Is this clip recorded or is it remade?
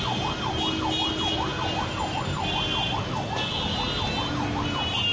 recorded